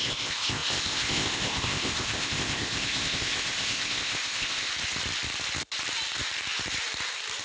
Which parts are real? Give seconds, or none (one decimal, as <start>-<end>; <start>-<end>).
4.7-7.4